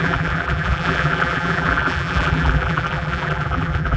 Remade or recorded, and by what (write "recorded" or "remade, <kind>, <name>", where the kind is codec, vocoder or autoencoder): remade, vocoder, BigVGAN v2